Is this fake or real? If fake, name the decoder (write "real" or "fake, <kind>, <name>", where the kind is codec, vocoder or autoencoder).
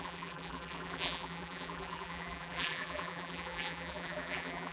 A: fake, vocoder, BigVGAN v2